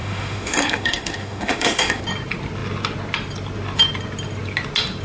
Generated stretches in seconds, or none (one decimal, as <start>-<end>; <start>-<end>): 0.0-2.0